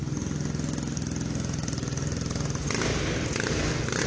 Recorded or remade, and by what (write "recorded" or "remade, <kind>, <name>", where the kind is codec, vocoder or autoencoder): recorded